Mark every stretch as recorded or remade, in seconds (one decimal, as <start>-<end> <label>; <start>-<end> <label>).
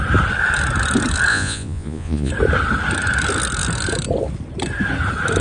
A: 0.0-1.3 recorded; 1.3-2.3 remade; 2.3-5.4 recorded